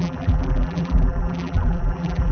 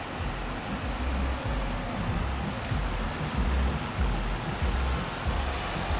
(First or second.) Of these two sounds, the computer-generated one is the first